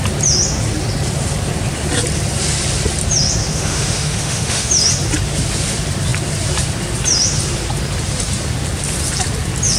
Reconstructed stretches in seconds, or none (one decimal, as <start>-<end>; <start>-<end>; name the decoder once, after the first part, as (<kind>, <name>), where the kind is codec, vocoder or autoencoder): 3.4-4.7 (autoencoder, DAC-VAE)